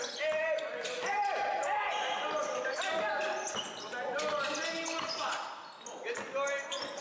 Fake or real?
real